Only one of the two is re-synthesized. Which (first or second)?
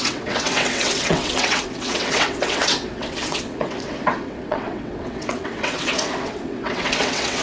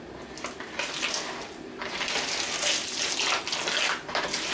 first